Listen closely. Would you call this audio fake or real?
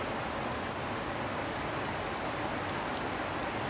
real